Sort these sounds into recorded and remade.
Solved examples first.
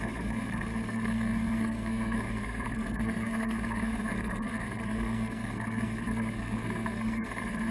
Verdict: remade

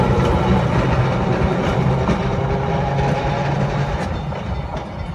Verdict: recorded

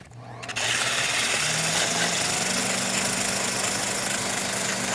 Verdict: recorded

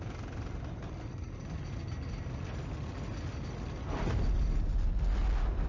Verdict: recorded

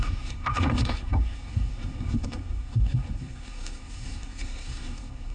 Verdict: remade